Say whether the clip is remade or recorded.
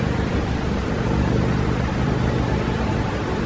recorded